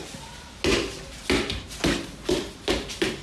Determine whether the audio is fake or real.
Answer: real